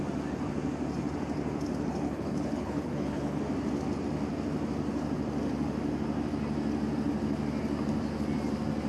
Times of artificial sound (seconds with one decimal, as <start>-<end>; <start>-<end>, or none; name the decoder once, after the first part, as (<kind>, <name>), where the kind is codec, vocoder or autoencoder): 1.9-3.4 (codec, HILCodec)